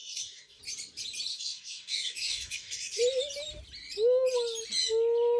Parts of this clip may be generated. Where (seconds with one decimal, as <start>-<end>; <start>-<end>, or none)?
0.0-0.6; 1.3-3.0